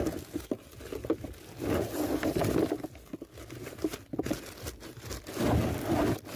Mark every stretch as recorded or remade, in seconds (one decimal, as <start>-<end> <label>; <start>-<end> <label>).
0.0-6.4 recorded